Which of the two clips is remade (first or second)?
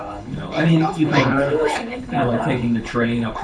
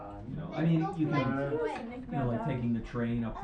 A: first